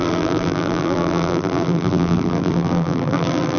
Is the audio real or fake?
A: fake